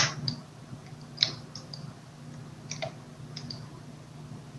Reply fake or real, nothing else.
real